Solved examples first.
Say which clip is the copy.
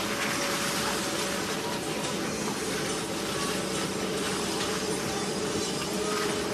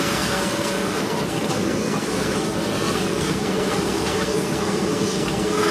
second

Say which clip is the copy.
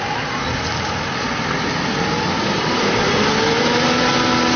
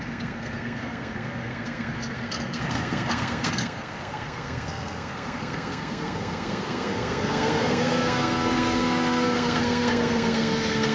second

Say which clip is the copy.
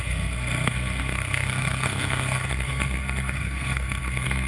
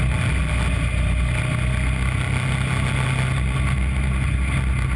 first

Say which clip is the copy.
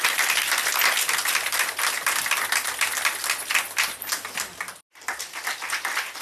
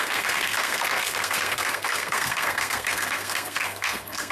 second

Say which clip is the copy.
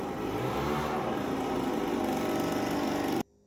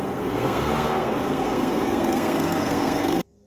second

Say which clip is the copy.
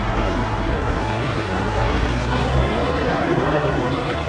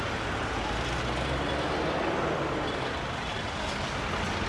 first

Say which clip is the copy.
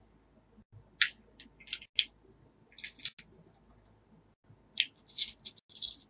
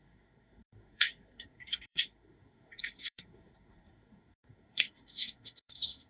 second